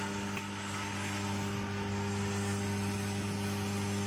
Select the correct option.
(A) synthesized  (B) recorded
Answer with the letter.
B